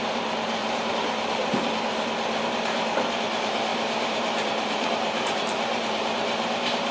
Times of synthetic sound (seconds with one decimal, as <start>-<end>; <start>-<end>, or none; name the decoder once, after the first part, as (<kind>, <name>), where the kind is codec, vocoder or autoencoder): 0.6-1.7 (vocoder, BigVGAN v2); 3.7-6.9